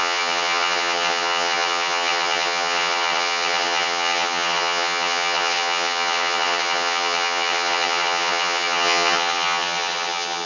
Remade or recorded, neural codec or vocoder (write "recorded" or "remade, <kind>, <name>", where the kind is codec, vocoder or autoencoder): remade, vocoder, HiFi-GAN